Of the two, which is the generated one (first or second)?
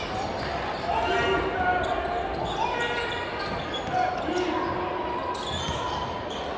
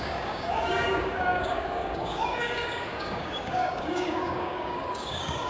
second